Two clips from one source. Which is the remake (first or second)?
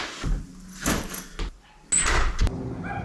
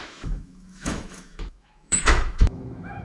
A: second